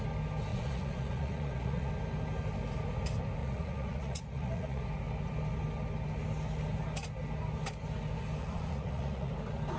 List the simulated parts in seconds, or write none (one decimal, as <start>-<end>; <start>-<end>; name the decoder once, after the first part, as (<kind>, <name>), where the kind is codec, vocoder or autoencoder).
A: 0.5-1.9 (vocoder, Vocos); 3.4-4.8; 8.4-9.3